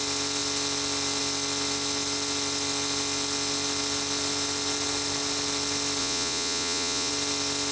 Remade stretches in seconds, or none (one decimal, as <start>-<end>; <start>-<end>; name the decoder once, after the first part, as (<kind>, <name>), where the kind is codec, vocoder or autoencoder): 6.0-7.1 (vocoder, Vocos)